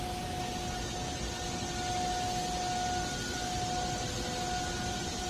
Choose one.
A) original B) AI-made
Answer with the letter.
A